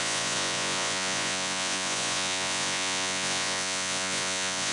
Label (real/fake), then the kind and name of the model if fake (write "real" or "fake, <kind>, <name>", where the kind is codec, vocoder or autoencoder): fake, vocoder, Vocos